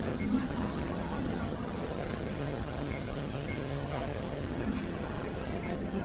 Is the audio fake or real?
fake